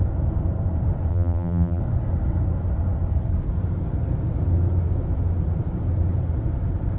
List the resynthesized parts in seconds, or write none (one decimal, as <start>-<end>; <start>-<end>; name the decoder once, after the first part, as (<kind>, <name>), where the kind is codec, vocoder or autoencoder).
1.1-1.8 (vocoder, BigVGAN v2)